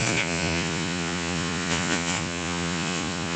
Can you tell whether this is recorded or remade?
remade